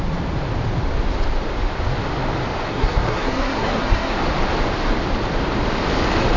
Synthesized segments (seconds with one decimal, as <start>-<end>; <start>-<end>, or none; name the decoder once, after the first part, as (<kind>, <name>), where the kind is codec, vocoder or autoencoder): 2.7-4.2 (codec, SNAC)